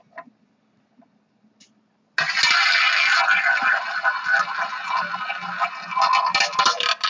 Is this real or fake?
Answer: real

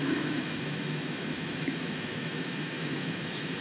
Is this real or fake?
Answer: fake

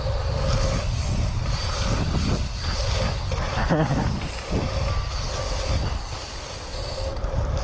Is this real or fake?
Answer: real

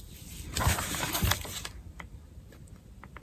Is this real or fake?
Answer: fake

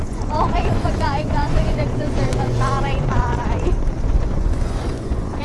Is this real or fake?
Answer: fake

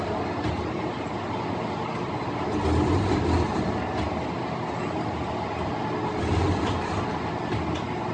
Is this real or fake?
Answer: real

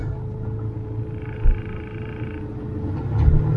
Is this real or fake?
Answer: real